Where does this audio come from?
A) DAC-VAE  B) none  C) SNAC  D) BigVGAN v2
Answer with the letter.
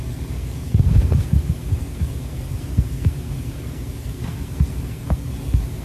C